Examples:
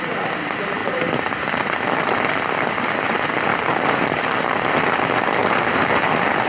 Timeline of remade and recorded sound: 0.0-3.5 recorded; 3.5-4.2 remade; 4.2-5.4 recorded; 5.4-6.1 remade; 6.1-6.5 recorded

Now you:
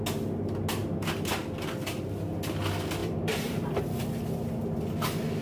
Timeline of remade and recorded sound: 0.0-3.0 recorded; 3.0-3.8 remade; 3.8-5.4 recorded

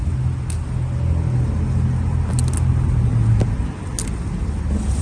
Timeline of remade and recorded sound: 0.0-5.0 recorded

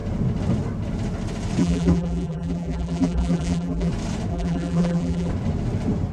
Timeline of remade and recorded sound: 0.0-1.6 recorded; 1.6-3.9 remade; 3.9-4.3 recorded; 4.3-5.3 remade; 5.3-6.1 recorded